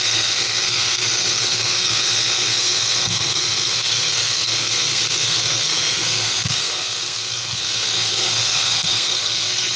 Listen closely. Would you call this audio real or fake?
fake